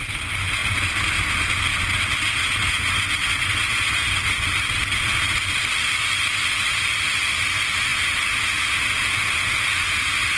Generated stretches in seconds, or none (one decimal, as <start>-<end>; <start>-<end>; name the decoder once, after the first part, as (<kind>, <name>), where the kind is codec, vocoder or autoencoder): none